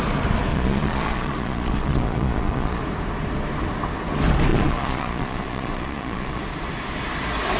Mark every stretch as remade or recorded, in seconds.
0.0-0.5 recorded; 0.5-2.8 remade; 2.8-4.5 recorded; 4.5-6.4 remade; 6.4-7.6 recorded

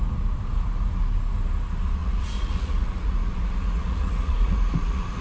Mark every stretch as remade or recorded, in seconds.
0.0-2.0 recorded; 2.0-5.2 remade

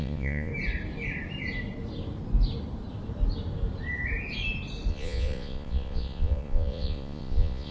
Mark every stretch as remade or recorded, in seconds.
0.0-0.5 remade; 0.5-4.9 recorded; 4.9-7.7 remade

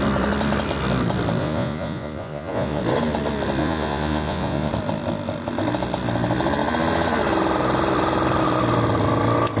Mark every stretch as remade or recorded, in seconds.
0.0-1.4 recorded; 1.4-2.8 remade; 2.8-3.6 recorded; 3.6-4.7 remade; 4.7-9.6 recorded

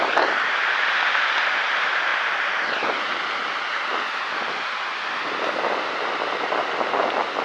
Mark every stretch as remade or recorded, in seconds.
0.0-7.4 recorded